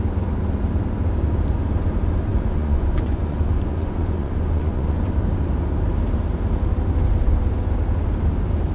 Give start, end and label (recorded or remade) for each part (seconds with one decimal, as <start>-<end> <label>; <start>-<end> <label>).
0.0-2.3 recorded; 2.3-5.0 remade; 5.0-8.7 recorded